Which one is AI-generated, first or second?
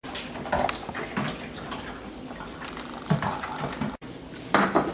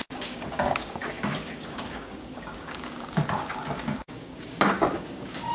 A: second